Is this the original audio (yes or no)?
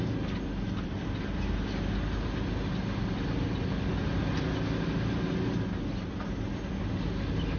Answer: yes